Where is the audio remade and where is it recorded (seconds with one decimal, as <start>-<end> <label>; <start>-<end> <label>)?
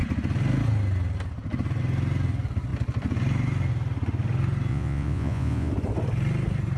0.0-4.7 recorded; 4.7-5.7 remade; 5.7-6.8 recorded